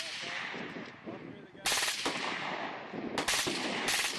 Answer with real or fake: real